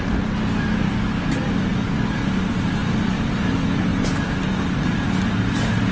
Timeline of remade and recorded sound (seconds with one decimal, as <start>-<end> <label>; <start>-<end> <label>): 0.0-5.9 recorded